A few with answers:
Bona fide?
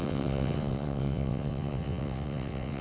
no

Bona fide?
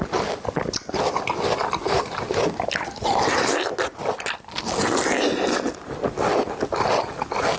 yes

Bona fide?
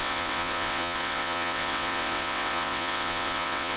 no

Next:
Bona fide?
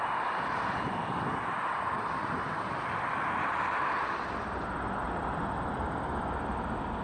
yes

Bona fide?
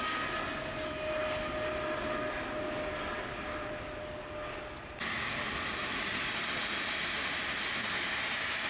yes